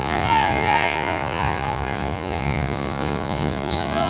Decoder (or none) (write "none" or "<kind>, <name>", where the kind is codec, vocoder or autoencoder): vocoder, Vocos